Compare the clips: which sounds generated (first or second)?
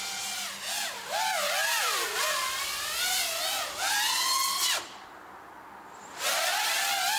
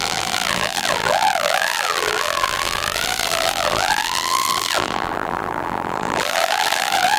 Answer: second